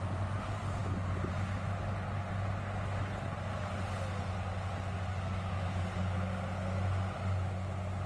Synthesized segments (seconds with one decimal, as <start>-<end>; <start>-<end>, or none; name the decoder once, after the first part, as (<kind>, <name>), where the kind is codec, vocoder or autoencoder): none